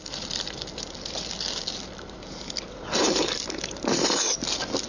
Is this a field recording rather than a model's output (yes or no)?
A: yes